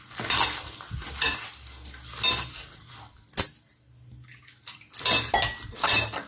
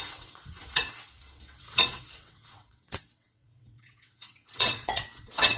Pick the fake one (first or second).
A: second